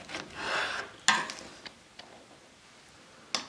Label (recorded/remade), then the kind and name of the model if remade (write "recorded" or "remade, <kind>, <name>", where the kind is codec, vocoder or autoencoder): recorded